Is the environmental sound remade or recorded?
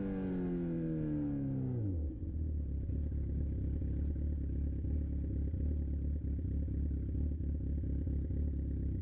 recorded